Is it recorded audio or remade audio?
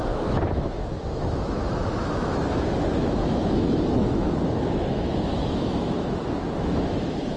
remade